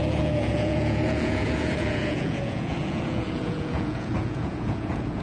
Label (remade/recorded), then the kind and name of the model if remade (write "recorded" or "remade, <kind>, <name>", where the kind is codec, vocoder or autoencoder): remade, vocoder, Vocos